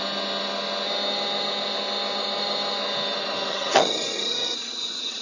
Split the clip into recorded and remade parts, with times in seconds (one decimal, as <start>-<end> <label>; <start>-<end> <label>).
0.0-3.5 recorded; 3.5-5.2 remade